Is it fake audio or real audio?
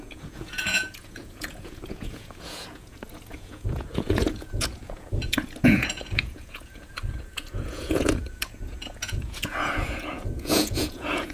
fake